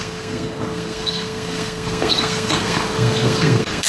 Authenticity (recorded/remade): remade